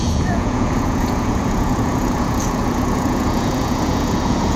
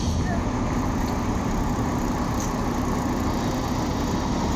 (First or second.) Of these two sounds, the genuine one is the second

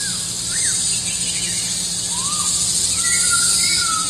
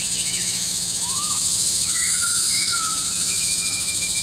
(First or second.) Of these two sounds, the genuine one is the first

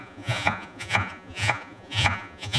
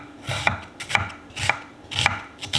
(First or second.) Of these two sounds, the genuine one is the second